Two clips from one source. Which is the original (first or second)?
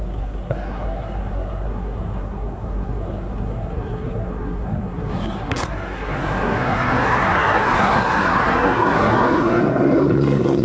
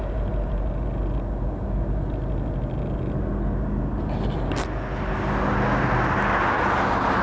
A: second